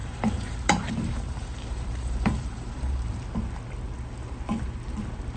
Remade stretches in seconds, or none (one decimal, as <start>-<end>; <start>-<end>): 0.0-3.2